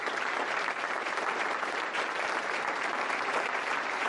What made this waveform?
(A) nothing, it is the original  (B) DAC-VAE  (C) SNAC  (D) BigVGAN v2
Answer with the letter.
D